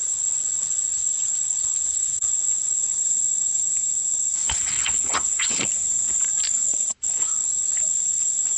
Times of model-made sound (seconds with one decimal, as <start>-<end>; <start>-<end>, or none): 0.0-2.9; 4.4-5.7; 6.7-7.3